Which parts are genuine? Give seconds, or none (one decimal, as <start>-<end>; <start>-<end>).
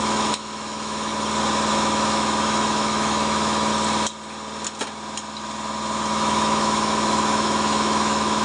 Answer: 1.1-1.7; 3.7-6.1